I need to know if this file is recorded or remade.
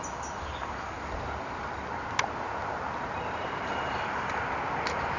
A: recorded